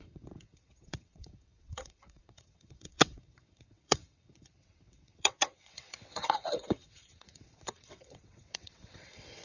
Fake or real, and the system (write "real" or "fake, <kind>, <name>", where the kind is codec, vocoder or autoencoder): fake, vocoder, WaveNeXt